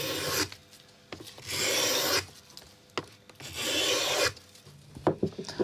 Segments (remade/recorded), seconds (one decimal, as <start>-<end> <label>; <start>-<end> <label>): 0.0-5.6 recorded

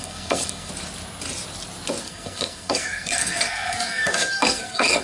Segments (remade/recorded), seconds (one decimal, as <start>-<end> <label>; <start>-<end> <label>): 0.0-0.7 remade; 0.7-2.0 recorded; 2.0-5.0 remade

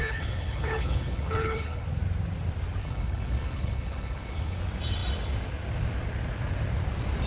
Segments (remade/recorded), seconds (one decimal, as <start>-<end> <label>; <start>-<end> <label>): 0.0-1.8 remade; 1.8-2.8 recorded; 2.8-4.6 remade; 4.6-7.3 recorded